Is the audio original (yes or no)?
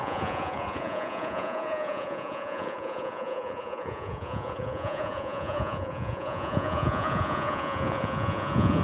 no